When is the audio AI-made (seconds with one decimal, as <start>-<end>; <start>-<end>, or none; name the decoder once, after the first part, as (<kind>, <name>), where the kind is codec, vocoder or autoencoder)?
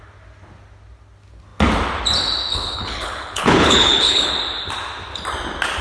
2.5-4.3 (codec, HILCodec)